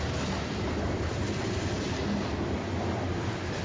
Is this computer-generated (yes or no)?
no